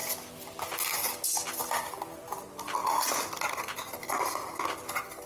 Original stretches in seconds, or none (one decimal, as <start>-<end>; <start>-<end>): 0.0-5.3